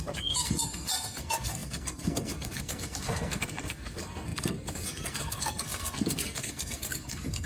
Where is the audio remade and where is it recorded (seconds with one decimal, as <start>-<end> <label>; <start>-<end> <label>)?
0.0-7.5 remade